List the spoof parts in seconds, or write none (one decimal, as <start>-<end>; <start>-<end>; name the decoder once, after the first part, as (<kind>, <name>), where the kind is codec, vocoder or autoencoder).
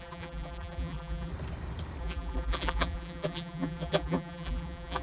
0.0-1.3 (vocoder, BigVGAN v2); 2.0-5.0